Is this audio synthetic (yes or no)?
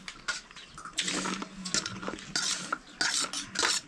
no